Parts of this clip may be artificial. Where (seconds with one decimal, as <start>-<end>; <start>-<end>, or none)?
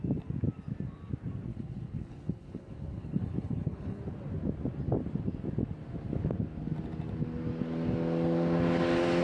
1.5-4.0